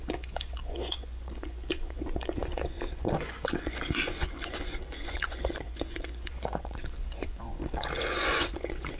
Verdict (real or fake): fake